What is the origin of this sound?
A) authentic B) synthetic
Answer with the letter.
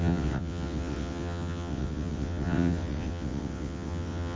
B